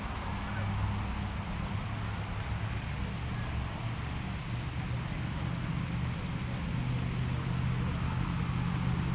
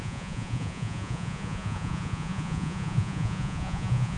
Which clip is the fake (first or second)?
second